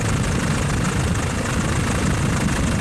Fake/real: real